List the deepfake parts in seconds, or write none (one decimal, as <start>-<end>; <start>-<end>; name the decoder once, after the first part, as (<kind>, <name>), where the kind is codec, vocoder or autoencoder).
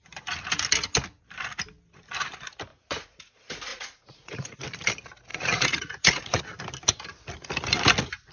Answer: 2.7-3.3 (vocoder, Vocos); 3.7-4.6; 5.3-6.4